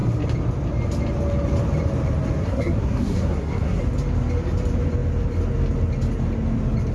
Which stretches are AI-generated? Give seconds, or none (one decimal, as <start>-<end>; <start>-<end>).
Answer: 2.4-3.8

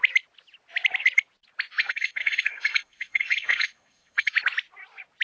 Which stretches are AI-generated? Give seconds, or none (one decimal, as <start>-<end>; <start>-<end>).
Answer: 1.8-4.3

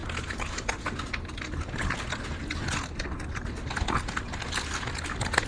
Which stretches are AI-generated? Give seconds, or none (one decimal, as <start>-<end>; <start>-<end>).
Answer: none

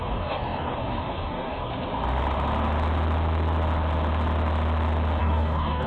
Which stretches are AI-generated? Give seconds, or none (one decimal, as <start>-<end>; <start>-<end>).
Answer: 0.0-1.7; 5.2-5.9

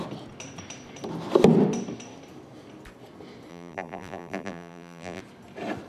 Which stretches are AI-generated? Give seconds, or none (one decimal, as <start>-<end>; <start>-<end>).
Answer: 3.5-5.2

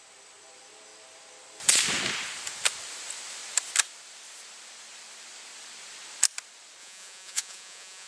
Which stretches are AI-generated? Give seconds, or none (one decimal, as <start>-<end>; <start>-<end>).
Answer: 6.8-8.1

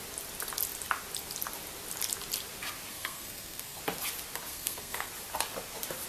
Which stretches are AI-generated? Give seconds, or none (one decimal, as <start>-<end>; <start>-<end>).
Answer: 2.9-3.8; 4.5-5.1

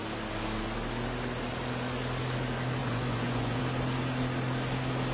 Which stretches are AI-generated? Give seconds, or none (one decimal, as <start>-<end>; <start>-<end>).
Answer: 2.8-3.6